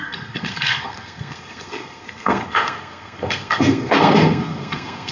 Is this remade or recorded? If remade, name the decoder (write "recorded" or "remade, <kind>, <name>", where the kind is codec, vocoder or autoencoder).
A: remade, codec, SNAC